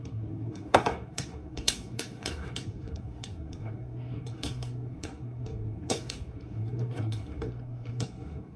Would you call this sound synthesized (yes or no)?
yes